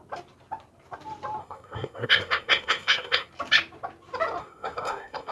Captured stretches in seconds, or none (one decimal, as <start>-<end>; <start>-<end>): 0.0-1.4; 3.3-4.4